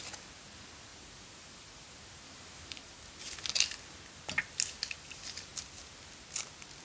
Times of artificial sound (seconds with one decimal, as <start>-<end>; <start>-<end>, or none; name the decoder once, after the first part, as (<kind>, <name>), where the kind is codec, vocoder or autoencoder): 0.9-3.1 (vocoder, BigVGAN v2)